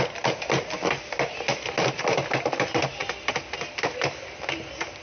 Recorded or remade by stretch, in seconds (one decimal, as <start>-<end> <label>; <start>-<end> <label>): 0.0-5.0 recorded